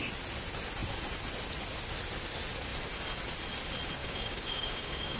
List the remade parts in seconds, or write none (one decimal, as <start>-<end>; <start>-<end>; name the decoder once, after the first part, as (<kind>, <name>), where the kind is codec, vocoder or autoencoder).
4.0-5.2 (codec, DAC)